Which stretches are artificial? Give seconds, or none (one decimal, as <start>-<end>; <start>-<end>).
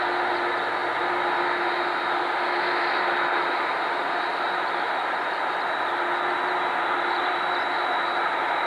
none